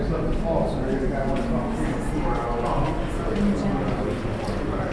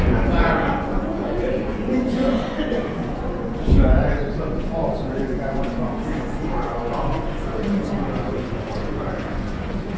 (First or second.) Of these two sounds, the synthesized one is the second